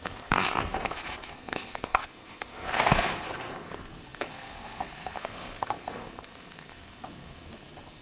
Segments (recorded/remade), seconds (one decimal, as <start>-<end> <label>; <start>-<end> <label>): 0.0-8.0 remade